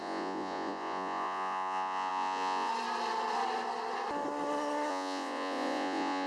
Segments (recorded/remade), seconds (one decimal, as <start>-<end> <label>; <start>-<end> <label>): 0.0-2.7 remade; 2.7-4.9 recorded; 4.9-6.3 remade

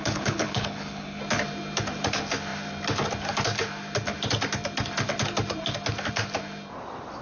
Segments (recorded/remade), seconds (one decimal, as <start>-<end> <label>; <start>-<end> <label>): 0.0-1.2 remade; 1.2-7.2 recorded

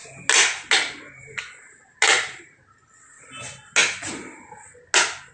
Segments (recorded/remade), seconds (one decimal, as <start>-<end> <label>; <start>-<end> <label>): 0.0-5.3 recorded